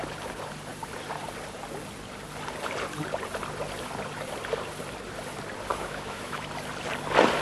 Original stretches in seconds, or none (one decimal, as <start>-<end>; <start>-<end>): 0.0-5.7; 6.5-7.4